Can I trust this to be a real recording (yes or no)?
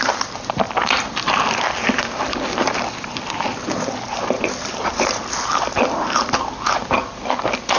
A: no